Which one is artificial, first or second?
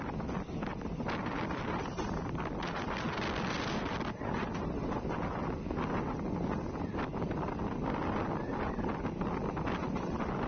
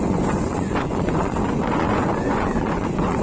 second